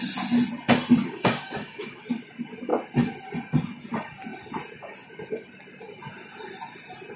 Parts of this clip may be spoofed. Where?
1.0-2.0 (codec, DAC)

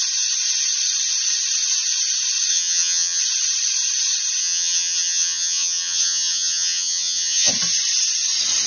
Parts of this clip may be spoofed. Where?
2.5-3.2 (vocoder, HiFi-GAN); 4.4-7.5

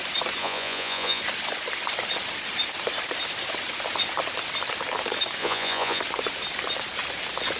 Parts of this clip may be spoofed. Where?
0.4-1.2 (vocoder, Vocos); 5.4-6.0

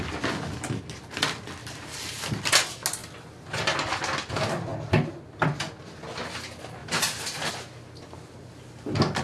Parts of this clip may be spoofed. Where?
1.6-2.4 (vocoder, BigVGAN v2); 4.7-5.2

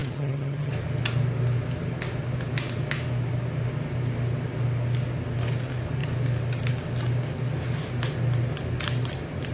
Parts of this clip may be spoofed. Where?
0.0-0.7 (vocoder, HiFi-GAN)

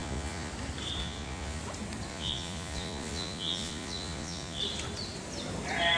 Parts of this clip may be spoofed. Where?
0.0-0.5 (vocoder, Vocos); 1.0-1.6; 2.1-4.6